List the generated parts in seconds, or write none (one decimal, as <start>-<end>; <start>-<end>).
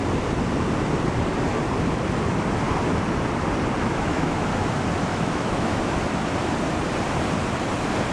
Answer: 3.8-4.4; 5.1-5.8